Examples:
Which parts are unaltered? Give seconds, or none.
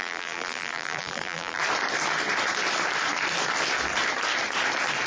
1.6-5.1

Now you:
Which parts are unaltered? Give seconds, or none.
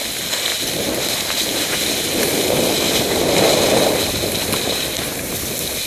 0.0-5.9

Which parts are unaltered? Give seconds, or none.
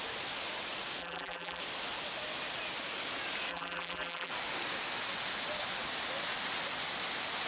0.0-1.0; 1.6-3.5; 4.3-7.5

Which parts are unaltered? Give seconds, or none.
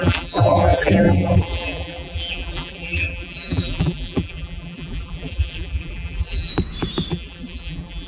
6.5-7.1